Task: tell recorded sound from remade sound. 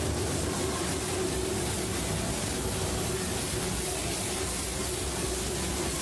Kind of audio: recorded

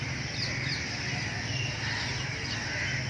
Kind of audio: recorded